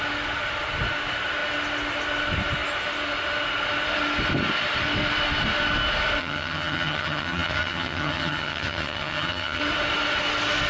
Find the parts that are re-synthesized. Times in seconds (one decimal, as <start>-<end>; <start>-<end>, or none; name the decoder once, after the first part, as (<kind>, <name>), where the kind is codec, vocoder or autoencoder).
6.2-9.6 (vocoder, HiFi-GAN)